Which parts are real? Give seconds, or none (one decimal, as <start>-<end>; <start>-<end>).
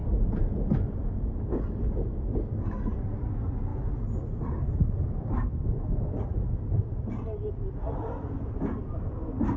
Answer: 1.4-9.6